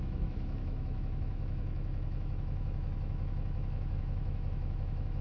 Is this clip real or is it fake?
fake